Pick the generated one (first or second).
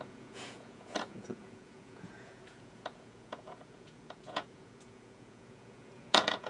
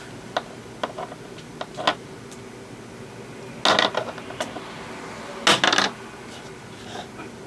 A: first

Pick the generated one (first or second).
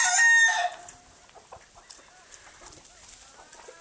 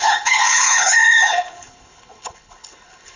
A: second